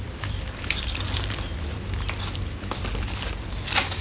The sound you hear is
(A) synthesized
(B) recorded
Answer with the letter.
A